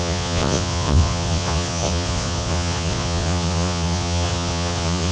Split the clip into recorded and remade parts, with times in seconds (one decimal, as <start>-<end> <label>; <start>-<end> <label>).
0.0-5.1 remade